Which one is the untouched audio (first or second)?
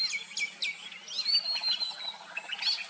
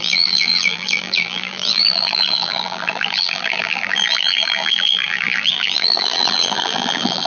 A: first